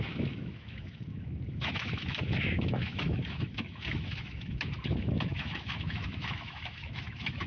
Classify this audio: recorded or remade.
remade